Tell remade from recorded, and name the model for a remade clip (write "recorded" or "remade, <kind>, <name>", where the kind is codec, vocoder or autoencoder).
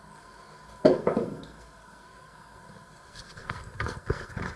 remade, codec, SNAC